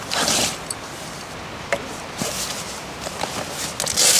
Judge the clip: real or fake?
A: real